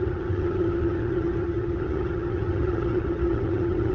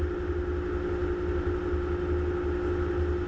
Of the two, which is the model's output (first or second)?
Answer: first